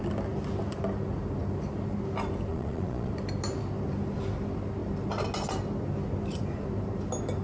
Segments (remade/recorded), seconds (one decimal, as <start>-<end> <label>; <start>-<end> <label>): 0.0-2.5 recorded; 2.5-3.1 remade; 3.1-7.4 recorded

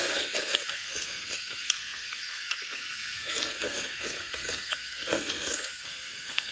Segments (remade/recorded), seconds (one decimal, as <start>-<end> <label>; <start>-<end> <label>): 0.0-6.5 remade

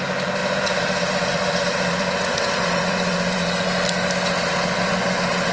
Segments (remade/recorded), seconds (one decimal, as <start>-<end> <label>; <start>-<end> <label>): 0.0-0.4 recorded; 0.4-3.7 remade; 3.7-5.5 recorded

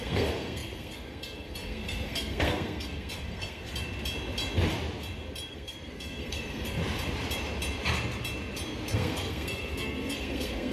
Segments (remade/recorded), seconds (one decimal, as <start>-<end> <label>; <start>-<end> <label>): 0.0-3.7 remade; 3.7-5.5 recorded; 5.5-6.8 remade; 6.8-8.9 recorded; 8.9-10.7 remade